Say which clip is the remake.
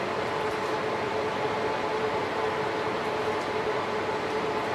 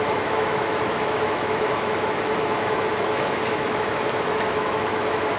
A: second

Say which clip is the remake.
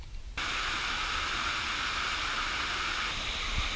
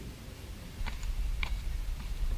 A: second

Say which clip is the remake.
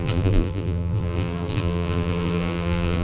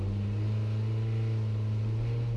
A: first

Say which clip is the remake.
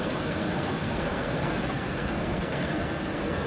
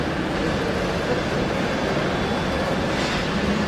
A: first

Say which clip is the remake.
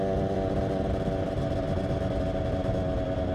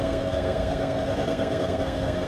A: second